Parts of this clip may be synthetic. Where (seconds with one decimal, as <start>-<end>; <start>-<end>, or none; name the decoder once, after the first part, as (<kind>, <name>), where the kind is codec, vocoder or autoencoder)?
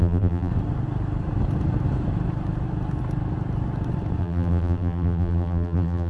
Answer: 0.0-0.5 (vocoder, BigVGAN v2); 4.2-6.1